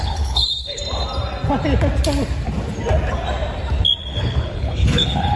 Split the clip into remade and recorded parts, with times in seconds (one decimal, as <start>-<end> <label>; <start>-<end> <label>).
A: 0.0-0.8 remade; 0.8-4.0 recorded; 4.0-5.4 remade